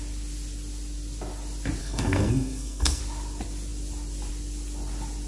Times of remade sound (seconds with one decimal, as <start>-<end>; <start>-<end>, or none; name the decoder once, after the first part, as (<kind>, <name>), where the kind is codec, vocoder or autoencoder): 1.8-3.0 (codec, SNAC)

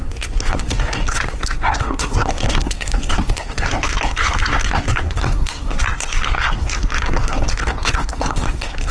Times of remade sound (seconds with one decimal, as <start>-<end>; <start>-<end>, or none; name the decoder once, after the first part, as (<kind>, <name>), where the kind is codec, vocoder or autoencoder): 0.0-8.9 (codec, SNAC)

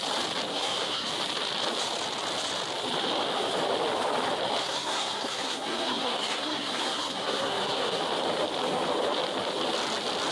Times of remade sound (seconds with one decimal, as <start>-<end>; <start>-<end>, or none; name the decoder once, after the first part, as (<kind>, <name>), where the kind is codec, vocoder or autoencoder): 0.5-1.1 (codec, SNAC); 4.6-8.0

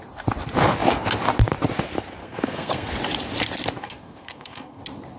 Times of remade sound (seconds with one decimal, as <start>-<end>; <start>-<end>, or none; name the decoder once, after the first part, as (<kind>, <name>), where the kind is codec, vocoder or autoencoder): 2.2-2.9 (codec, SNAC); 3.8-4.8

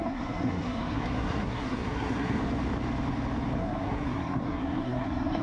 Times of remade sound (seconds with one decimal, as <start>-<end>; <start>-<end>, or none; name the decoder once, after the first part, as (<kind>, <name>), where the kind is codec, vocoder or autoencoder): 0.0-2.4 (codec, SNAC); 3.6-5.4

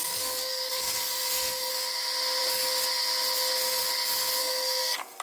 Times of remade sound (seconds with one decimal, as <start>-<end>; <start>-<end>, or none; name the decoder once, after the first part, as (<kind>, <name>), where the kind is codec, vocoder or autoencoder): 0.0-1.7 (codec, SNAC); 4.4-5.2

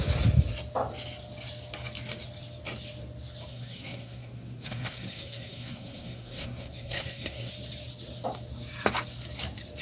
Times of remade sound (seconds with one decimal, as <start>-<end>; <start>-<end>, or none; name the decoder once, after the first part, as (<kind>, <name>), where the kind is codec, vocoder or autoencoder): 3.5-7.5 (codec, SNAC)

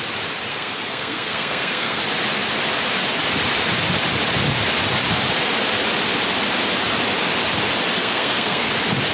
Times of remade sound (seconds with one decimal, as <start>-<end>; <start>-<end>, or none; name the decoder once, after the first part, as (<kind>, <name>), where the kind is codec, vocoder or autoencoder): 0.5-2.0 (codec, SNAC); 8.0-8.7